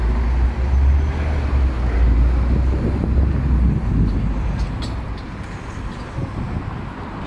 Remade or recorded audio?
recorded